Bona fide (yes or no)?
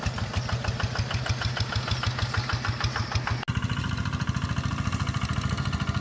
yes